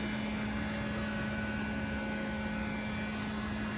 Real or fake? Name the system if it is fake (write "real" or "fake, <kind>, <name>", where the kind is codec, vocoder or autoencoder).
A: fake, vocoder, BigVGAN v2